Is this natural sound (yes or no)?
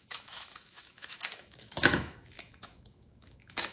no